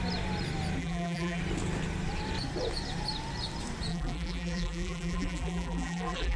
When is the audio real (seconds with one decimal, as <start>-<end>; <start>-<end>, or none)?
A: 0.0-0.8; 1.4-3.9